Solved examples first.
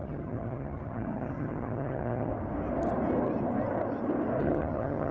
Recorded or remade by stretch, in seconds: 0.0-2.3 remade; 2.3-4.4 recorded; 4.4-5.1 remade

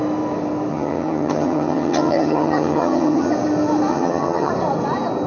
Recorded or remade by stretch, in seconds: 0.0-0.7 recorded; 0.7-3.3 remade; 3.3-3.9 recorded; 3.9-4.5 remade; 4.5-5.3 recorded

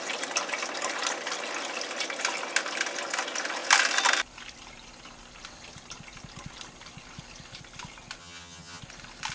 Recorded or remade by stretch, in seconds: 0.0-8.2 recorded; 8.2-8.8 remade; 8.8-9.3 recorded

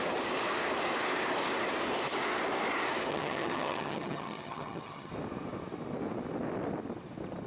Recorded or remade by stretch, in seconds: 0.0-3.1 recorded; 3.1-5.1 remade; 5.1-7.5 recorded

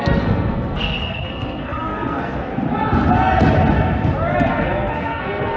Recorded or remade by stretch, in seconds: 0.0-2.5 remade; 2.5-4.5 recorded; 4.5-5.6 remade

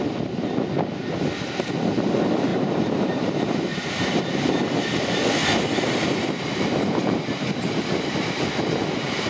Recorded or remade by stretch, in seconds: 0.0-2.5 recorded; 2.5-4.2 remade; 4.2-5.4 recorded; 5.4-9.3 remade

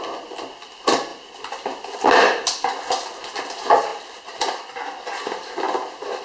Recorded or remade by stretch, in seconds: 0.0-6.2 recorded

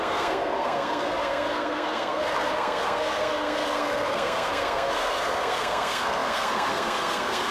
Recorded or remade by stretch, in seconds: 0.0-7.5 remade